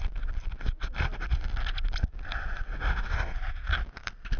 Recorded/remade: recorded